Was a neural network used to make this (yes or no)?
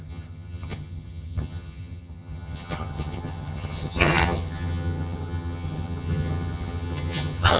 yes